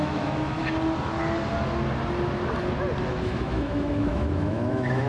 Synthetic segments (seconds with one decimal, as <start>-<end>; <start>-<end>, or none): 0.0-0.6; 3.1-5.1